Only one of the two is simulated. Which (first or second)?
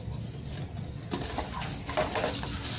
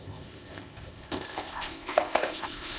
second